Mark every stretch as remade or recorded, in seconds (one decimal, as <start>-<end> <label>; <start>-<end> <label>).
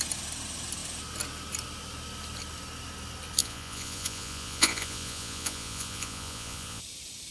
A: 0.0-3.4 recorded; 3.4-6.8 remade; 6.8-7.3 recorded